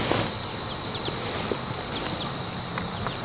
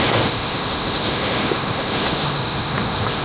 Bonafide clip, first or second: first